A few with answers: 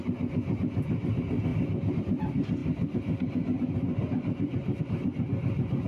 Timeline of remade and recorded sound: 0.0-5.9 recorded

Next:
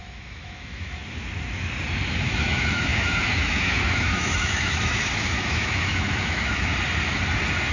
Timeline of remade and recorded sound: 0.0-1.0 remade; 1.0-2.1 recorded; 2.1-6.7 remade; 6.7-7.7 recorded

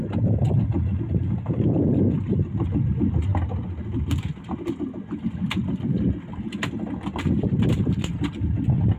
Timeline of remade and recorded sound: 0.0-9.0 recorded

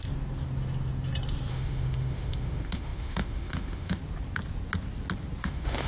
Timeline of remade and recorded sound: 0.0-1.5 recorded; 1.5-4.0 remade; 4.0-5.4 recorded; 5.4-5.9 remade

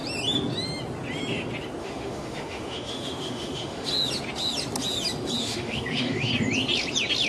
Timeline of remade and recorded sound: 0.0-1.8 recorded; 1.8-3.9 remade; 3.9-5.4 recorded; 5.4-6.3 remade; 6.3-7.3 recorded

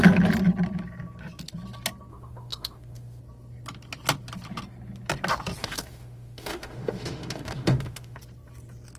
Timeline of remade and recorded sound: 0.0-2.1 recorded; 2.1-3.2 remade; 3.2-5.6 recorded; 5.6-8.2 remade; 8.2-9.0 recorded